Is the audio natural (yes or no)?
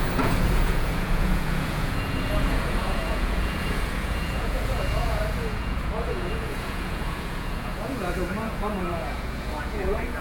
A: no